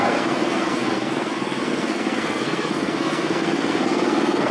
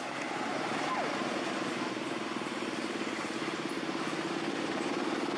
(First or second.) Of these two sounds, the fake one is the first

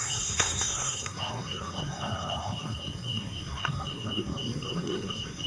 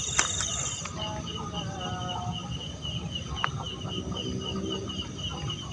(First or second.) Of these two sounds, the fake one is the first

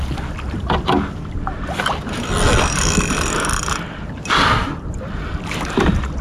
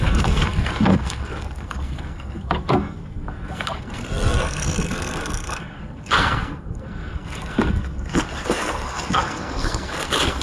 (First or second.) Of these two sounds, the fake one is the second